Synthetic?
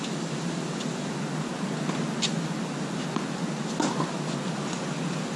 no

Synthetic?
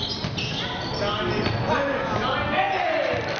no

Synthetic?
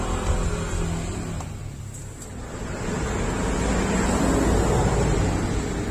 no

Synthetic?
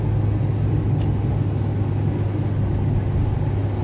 no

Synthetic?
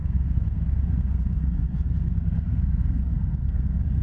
yes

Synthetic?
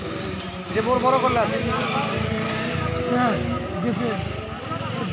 no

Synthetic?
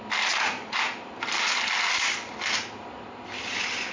no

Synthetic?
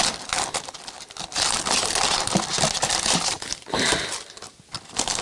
no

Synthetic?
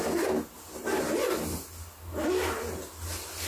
no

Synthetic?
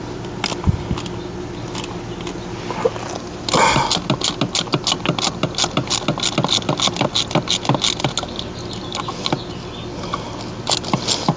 no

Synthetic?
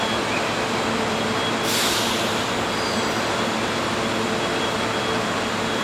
yes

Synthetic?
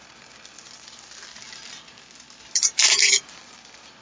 no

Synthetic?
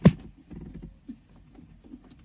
no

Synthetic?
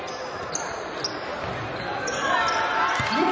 no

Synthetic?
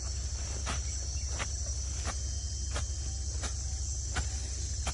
no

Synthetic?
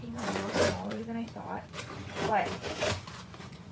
yes